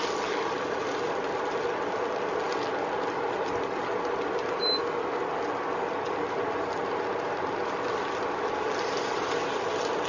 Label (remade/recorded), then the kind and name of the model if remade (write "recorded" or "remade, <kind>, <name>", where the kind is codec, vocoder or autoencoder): recorded